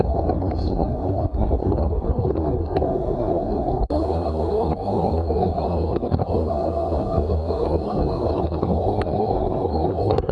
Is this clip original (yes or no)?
no